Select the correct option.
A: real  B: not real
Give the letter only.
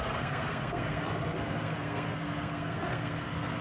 B